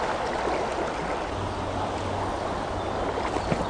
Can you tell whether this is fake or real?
real